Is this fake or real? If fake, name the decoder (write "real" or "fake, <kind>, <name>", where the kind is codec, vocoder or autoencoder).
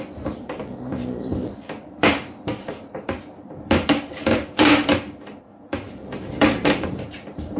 fake, vocoder, BigVGAN v2